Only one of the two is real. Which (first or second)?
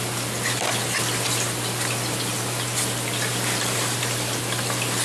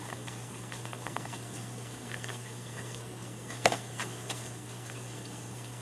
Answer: first